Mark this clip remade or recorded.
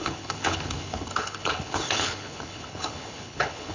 remade